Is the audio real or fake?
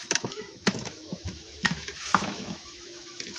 fake